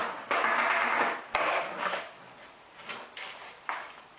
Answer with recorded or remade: recorded